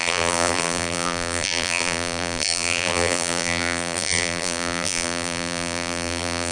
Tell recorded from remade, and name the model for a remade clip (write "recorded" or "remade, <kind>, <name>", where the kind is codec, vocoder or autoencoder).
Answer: remade, vocoder, BigVGAN v2